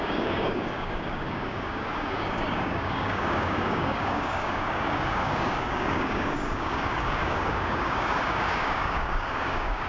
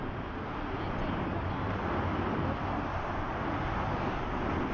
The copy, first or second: first